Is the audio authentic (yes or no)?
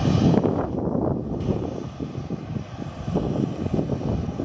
yes